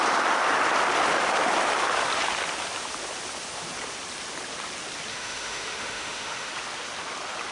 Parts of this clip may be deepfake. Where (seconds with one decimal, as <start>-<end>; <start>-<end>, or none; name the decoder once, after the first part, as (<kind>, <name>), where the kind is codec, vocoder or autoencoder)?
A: 5.1-6.5 (autoencoder, DAC-VAE)